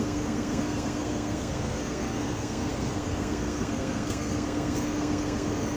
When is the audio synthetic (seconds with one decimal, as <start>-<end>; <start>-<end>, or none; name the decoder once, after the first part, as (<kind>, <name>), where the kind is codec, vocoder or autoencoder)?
0.0-5.8 (codec, SNAC)